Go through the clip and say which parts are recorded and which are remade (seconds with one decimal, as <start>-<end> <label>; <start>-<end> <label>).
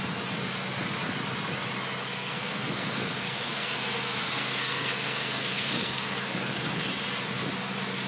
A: 0.0-2.0 recorded; 2.0-6.9 remade; 6.9-8.1 recorded